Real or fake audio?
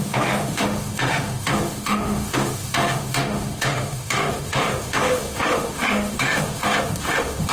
fake